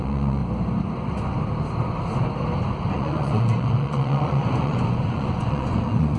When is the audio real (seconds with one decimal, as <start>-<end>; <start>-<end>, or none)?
0.4-2.9